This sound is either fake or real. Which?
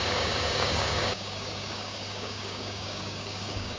fake